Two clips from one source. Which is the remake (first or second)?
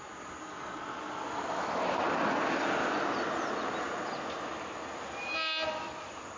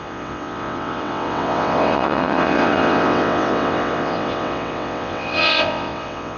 second